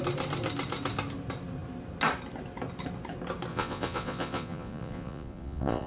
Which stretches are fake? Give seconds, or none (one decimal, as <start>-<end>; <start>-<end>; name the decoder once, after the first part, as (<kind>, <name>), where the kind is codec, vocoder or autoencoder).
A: 3.5-5.9 (vocoder, Vocos)